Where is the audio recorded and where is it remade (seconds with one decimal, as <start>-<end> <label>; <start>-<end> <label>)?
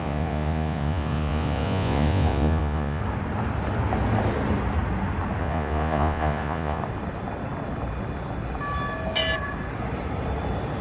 0.0-3.0 remade; 3.0-5.4 recorded; 5.4-6.8 remade; 6.8-10.8 recorded